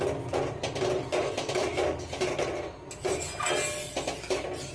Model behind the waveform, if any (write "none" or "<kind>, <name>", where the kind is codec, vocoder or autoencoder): none